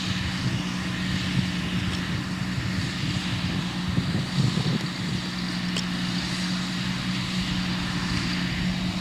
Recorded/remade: recorded